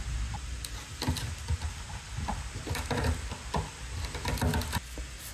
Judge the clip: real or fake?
real